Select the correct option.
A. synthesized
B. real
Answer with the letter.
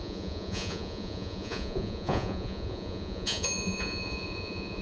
A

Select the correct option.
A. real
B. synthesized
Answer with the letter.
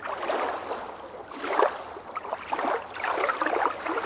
A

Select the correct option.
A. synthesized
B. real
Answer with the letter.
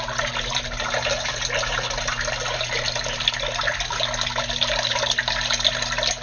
B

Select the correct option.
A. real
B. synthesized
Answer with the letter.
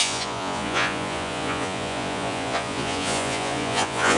B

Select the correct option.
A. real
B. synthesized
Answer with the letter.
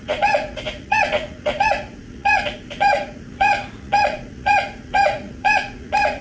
B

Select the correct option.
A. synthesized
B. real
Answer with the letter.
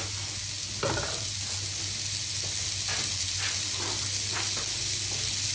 B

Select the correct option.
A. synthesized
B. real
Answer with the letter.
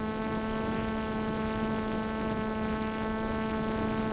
B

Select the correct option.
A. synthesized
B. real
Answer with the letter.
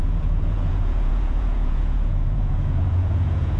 A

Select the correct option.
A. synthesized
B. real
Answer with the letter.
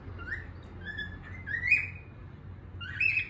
B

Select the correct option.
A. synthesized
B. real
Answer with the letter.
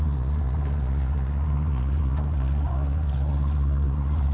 A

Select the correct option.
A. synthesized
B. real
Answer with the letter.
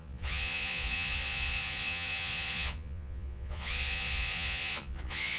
A